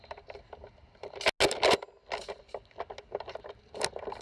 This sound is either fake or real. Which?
real